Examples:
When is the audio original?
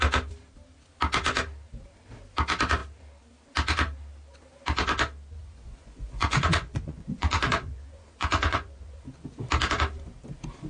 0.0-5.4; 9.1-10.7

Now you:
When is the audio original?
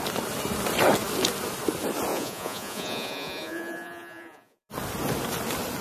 0.0-2.1; 4.7-5.8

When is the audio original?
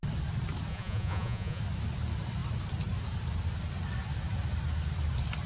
0.0-0.7; 1.6-5.5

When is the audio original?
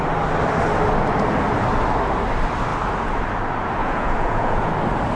0.0-3.8; 4.7-5.2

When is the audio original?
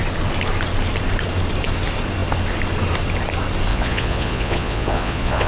0.0-3.7